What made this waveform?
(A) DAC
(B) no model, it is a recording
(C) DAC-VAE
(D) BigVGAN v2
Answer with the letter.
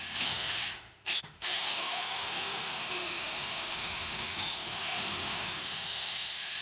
C